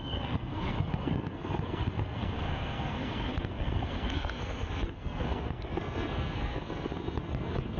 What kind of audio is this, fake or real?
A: fake